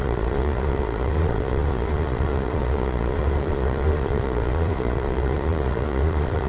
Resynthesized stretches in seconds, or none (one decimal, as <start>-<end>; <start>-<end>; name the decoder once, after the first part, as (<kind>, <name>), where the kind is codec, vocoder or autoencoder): 0.0-6.5 (vocoder, Vocos)